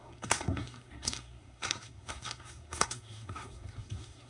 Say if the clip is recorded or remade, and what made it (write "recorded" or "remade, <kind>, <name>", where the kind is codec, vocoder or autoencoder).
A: remade, codec, SNAC